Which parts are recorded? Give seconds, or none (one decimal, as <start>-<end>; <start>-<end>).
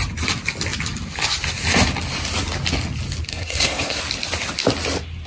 0.0-3.3; 4.0-5.3